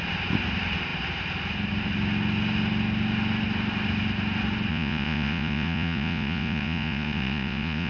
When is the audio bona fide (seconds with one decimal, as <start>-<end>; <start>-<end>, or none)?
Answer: 0.0-4.7

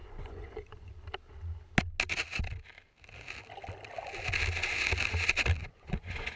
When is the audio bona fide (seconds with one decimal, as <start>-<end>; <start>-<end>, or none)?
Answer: 0.9-5.6

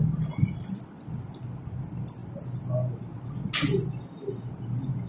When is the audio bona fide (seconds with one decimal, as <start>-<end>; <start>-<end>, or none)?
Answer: 0.0-5.1

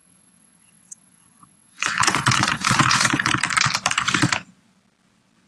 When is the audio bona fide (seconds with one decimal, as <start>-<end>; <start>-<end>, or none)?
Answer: 3.3-5.5

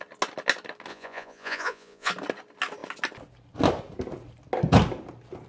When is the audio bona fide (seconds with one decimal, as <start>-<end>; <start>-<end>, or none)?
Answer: 0.0-0.9; 2.1-5.5

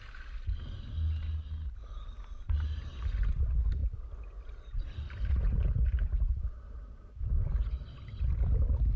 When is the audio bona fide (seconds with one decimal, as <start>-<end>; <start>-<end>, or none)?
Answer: 0.0-9.0

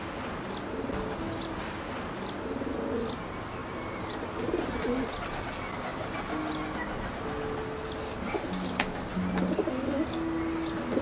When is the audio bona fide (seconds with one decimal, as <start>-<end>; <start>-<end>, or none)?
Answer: 0.0-3.6; 4.2-11.0